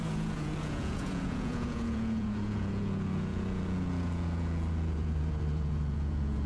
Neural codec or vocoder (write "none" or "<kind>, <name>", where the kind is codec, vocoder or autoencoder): vocoder, Vocos